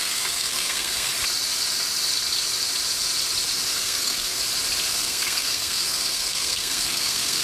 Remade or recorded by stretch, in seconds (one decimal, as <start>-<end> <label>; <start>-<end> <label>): 0.0-1.1 remade; 1.1-3.8 recorded; 3.8-4.4 remade; 4.4-4.9 recorded; 4.9-7.4 remade